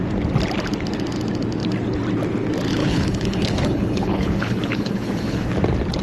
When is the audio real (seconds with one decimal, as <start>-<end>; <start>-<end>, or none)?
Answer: 0.0-2.8; 5.5-6.0